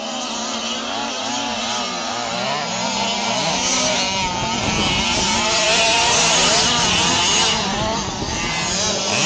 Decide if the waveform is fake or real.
real